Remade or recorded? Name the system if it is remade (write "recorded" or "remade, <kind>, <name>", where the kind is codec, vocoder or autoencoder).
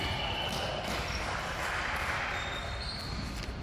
recorded